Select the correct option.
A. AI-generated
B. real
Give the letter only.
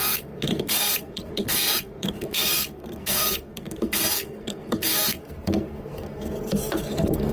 A